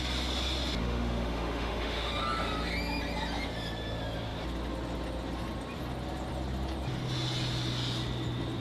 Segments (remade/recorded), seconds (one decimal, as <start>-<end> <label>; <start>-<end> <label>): 0.0-0.8 recorded; 0.8-2.1 remade; 2.1-8.6 recorded